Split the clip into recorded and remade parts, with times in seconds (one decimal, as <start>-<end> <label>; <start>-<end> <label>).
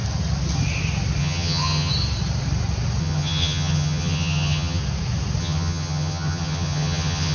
0.0-1.2 recorded; 1.2-1.9 remade; 1.9-3.0 recorded; 3.0-4.8 remade; 4.8-5.4 recorded; 5.4-7.3 remade